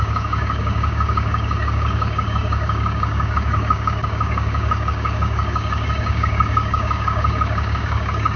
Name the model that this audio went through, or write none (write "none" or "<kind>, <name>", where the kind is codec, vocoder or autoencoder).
codec, DAC